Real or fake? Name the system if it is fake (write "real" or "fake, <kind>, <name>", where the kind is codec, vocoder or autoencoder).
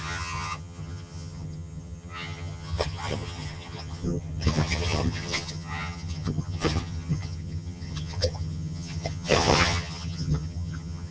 fake, vocoder, HiFi-GAN